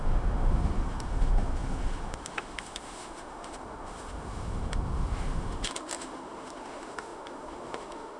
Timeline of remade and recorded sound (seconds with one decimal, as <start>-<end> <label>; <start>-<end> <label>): 0.0-8.2 remade